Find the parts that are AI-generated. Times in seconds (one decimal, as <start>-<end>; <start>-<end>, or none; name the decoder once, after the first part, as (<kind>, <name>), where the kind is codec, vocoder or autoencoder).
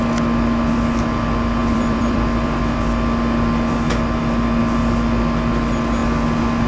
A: 1.6-2.6 (vocoder, BigVGAN v2)